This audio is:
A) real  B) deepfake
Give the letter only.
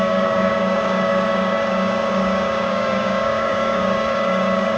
B